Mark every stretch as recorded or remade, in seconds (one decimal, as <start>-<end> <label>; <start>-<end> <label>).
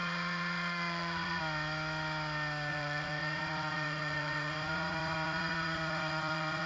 0.0-1.4 remade; 1.4-2.7 recorded; 2.7-6.7 remade